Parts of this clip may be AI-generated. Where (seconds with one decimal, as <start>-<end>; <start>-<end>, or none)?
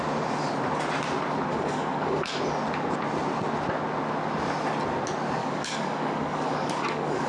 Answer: 1.5-2.4; 5.4-7.3